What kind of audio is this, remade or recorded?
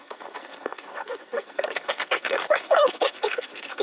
remade